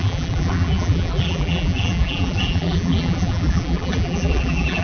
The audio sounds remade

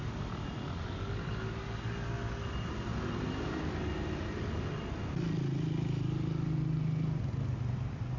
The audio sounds recorded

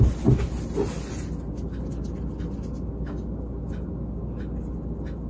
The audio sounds recorded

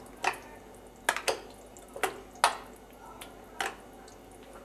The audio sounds recorded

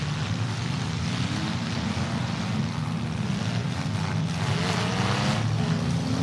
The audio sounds recorded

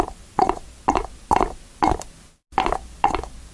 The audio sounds recorded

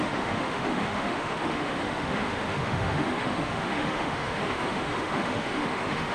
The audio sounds remade